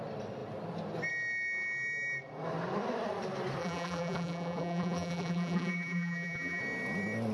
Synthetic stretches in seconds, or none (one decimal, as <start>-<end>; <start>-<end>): 3.6-6.6